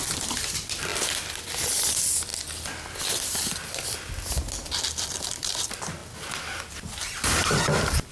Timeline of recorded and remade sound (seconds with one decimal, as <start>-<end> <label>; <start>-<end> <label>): 0.0-0.9 remade; 0.9-1.9 recorded; 1.9-2.3 remade; 2.3-4.8 recorded; 4.8-6.0 remade; 6.0-6.7 recorded; 6.7-8.1 remade